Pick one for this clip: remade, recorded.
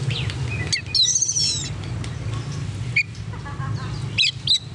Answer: recorded